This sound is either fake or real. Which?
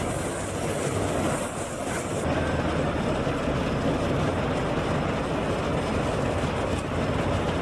real